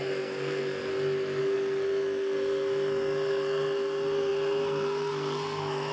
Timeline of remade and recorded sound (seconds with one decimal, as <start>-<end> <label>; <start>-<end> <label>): 0.0-0.9 remade; 0.9-1.4 recorded; 1.4-5.9 remade